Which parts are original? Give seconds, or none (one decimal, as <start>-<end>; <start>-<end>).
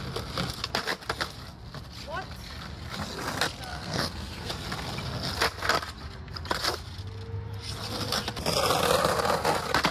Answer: 0.0-3.7; 4.5-9.9